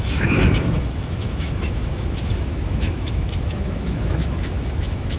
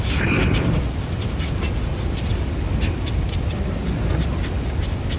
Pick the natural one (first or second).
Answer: second